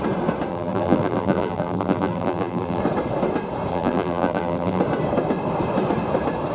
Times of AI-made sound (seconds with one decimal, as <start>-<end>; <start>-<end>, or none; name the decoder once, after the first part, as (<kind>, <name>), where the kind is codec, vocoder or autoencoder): 0.5-2.8 (vocoder, BigVGAN v2); 3.7-4.8